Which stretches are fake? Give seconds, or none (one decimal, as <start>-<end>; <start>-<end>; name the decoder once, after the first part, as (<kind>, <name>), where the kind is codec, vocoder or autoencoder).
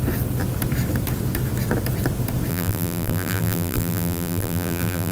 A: 2.5-5.1 (vocoder, BigVGAN v2)